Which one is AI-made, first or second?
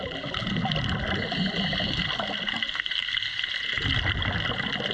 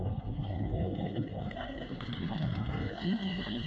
second